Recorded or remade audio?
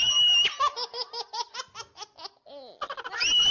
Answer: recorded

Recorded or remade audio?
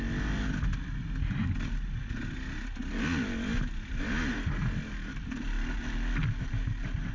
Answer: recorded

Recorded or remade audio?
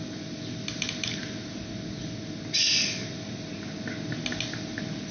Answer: recorded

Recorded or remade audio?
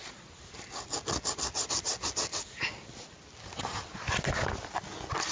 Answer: recorded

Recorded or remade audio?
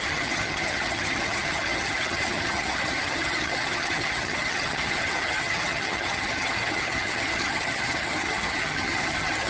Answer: remade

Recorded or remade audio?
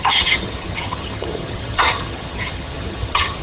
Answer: remade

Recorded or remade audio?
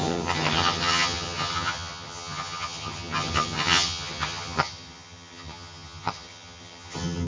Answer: remade